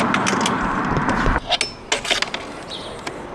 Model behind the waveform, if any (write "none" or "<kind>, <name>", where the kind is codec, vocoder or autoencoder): none